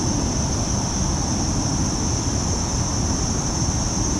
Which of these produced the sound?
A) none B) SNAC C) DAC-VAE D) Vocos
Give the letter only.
A